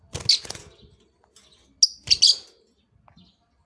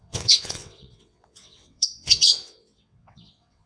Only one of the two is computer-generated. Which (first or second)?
second